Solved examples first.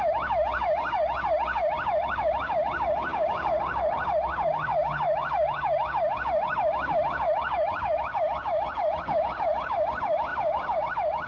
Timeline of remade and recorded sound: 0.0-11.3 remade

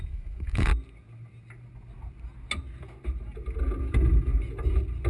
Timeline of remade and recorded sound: 0.0-0.7 remade; 0.7-3.8 recorded; 3.8-4.3 remade; 4.3-5.1 recorded